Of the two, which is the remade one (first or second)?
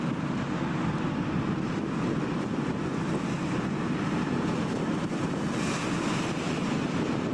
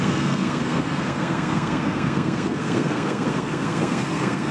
second